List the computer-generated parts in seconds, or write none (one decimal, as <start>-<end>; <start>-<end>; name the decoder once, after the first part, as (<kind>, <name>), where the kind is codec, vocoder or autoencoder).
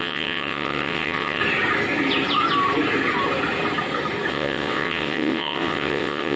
0.0-1.4 (vocoder, WaveNeXt); 4.3-6.4